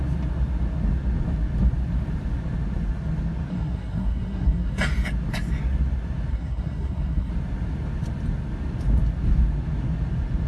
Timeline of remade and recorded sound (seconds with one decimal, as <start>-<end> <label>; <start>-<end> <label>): 0.0-3.5 recorded; 3.5-4.8 remade; 4.8-6.3 recorded; 6.3-7.3 remade; 7.3-10.5 recorded